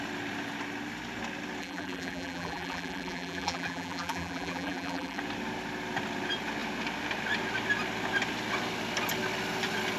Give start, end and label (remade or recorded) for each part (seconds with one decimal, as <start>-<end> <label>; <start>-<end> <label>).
0.0-1.6 recorded; 1.6-5.2 remade; 5.2-10.0 recorded